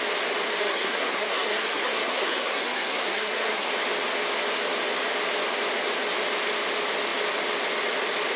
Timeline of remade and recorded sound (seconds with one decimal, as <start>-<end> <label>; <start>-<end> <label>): 0.0-0.6 recorded; 0.6-3.7 remade; 3.7-8.4 recorded